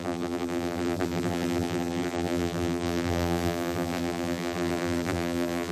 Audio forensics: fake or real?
fake